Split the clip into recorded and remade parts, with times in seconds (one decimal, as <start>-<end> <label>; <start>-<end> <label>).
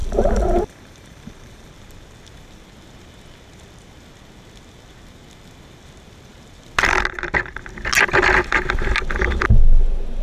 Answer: 0.0-1.7 remade; 1.7-10.2 recorded